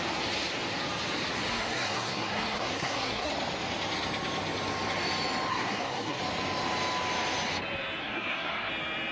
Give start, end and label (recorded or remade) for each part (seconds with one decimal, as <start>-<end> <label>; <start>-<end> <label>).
0.0-1.5 recorded; 1.5-3.3 remade; 3.3-5.5 recorded; 5.5-6.2 remade; 6.2-8.0 recorded; 8.0-8.7 remade; 8.7-9.1 recorded

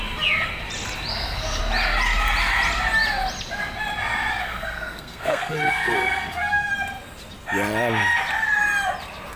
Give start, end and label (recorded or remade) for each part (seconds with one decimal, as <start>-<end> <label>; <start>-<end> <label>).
0.0-1.1 recorded; 1.1-1.6 remade; 1.6-4.3 recorded; 4.3-6.7 remade; 6.7-9.4 recorded

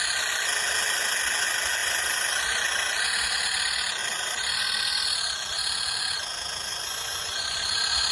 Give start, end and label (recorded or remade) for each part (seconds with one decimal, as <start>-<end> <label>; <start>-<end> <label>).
0.0-6.7 recorded; 6.7-7.6 remade; 7.6-8.1 recorded